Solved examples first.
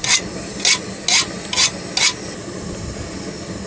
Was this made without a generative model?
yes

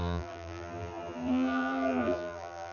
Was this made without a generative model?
no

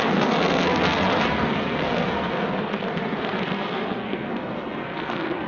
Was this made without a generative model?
no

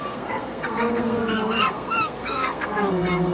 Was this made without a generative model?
no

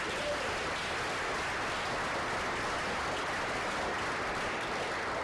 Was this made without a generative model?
yes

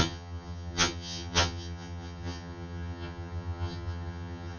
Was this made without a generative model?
no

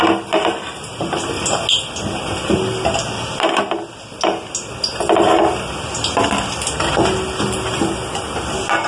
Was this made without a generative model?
yes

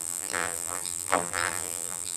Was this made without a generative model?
no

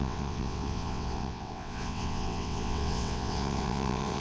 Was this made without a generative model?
no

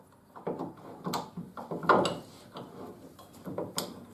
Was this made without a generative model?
yes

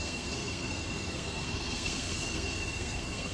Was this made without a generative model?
no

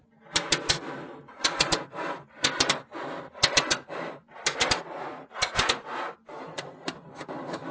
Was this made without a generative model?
yes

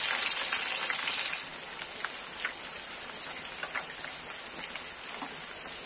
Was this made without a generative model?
yes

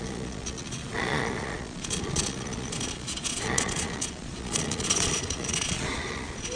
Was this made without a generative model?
no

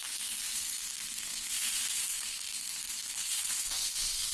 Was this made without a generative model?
no